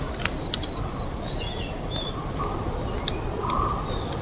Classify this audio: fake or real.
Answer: real